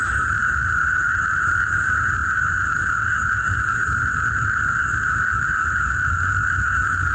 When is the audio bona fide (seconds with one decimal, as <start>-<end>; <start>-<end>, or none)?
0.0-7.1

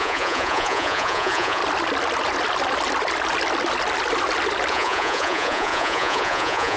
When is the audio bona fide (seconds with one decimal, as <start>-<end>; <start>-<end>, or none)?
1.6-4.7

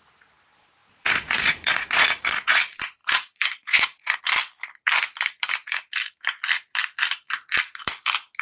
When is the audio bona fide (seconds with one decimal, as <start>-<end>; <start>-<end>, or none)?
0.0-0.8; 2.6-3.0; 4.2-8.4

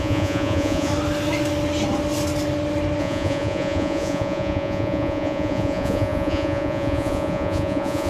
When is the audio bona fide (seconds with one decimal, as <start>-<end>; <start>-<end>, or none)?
0.9-3.0

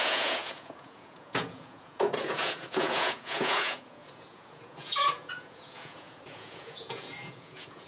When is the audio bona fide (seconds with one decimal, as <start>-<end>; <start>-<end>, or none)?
none